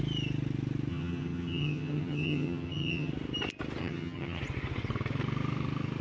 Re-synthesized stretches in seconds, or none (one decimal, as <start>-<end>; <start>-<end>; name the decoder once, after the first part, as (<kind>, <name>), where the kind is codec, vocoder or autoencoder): 0.9-3.1 (vocoder, HiFi-GAN); 3.8-4.4